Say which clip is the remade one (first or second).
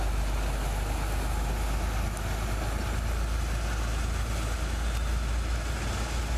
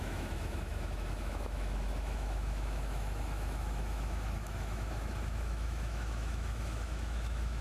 second